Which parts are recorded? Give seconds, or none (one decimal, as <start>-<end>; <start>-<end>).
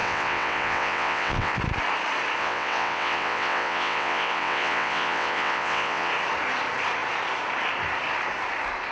1.6-2.4; 6.1-8.9